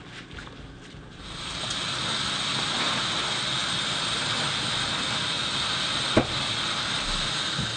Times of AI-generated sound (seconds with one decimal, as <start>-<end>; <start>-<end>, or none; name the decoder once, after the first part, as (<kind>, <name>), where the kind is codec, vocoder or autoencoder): none